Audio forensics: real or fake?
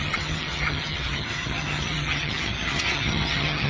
fake